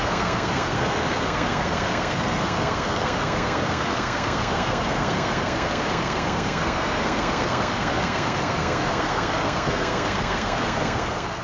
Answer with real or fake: fake